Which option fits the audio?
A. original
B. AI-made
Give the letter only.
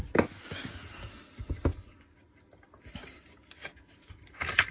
A